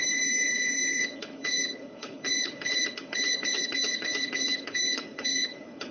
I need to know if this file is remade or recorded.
remade